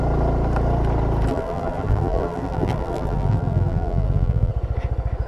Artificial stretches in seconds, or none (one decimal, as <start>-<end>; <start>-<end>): 1.3-4.5